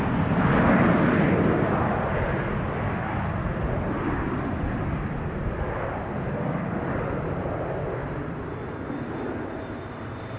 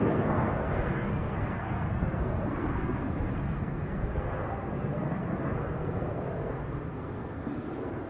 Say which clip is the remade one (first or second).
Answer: second